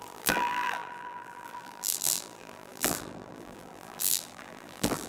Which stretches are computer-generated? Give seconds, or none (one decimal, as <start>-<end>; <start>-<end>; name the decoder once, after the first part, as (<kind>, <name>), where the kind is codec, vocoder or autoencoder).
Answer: 0.0-5.1 (vocoder, BigVGAN v2)